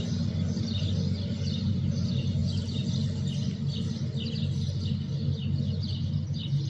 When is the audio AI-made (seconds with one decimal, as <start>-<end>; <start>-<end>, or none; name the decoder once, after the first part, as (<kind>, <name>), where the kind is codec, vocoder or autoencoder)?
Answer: none